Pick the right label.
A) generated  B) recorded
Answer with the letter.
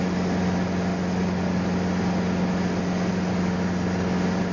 B